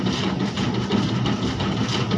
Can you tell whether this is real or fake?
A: real